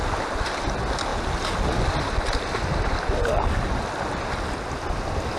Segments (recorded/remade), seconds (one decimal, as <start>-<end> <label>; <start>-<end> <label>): 0.0-5.4 recorded